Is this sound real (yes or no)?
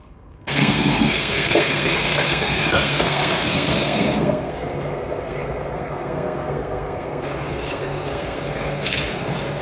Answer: no